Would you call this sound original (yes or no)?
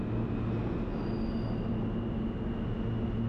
yes